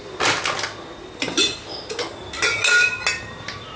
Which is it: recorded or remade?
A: recorded